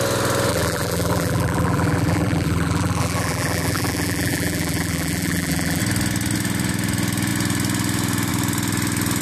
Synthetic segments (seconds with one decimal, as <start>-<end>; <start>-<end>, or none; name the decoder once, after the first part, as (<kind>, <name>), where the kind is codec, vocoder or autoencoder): 0.5-5.8 (vocoder, BigVGAN v2)